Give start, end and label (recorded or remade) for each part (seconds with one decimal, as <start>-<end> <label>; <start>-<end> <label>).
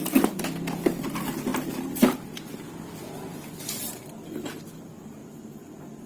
0.0-6.1 recorded